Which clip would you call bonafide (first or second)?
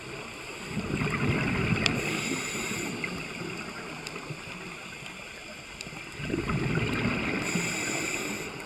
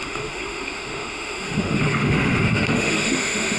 first